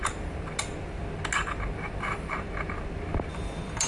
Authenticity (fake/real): real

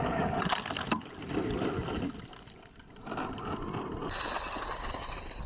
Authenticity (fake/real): real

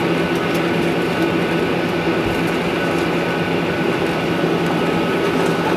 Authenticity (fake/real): real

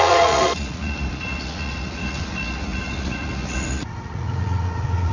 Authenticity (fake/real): fake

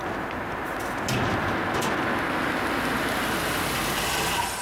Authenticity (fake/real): real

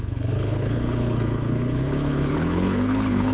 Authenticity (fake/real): fake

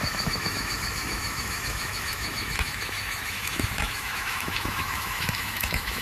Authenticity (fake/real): fake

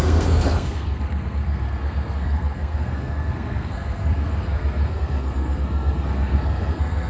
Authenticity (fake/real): fake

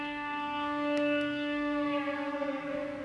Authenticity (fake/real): fake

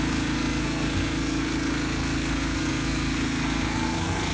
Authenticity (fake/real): fake